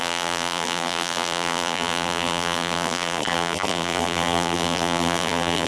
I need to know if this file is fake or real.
fake